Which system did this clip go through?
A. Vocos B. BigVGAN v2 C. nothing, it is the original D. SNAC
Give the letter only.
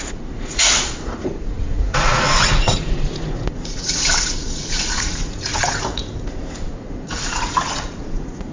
A